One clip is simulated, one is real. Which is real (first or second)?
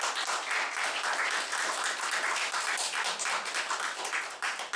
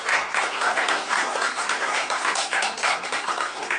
first